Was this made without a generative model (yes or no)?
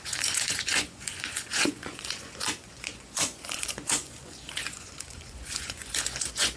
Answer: no